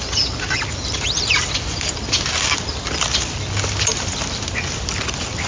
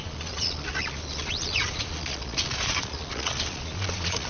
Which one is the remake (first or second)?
second